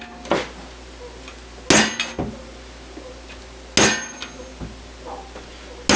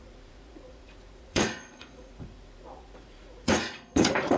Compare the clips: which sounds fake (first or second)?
second